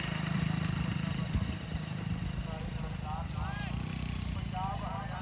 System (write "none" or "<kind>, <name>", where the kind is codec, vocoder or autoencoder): none